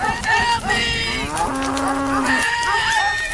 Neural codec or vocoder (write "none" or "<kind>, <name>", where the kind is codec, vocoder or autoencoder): none